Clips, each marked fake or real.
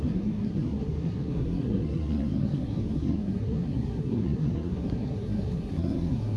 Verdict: fake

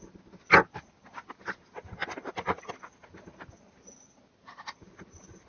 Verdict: real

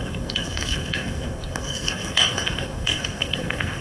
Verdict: fake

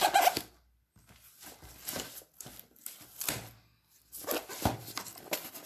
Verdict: real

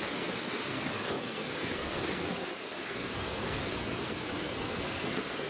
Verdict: fake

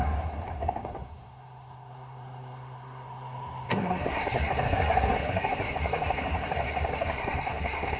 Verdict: fake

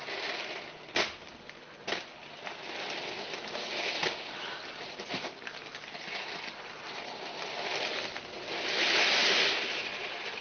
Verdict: real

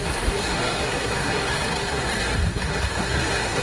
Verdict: fake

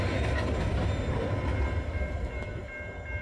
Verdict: real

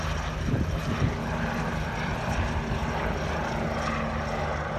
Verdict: real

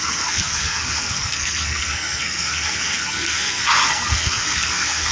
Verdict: fake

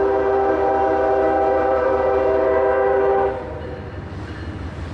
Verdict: real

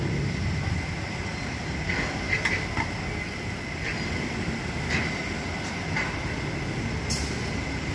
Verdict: real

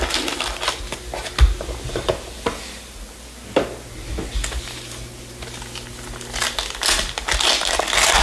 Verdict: real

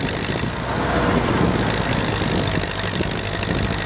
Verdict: real